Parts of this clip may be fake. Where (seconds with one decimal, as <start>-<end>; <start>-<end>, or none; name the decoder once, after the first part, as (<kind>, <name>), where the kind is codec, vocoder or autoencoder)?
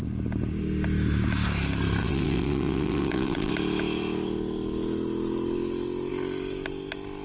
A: 2.0-3.5 (vocoder, WaveNeXt)